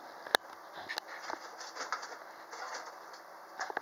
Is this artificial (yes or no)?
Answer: no